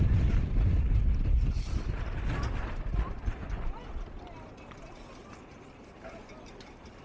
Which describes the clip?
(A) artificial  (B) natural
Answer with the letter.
B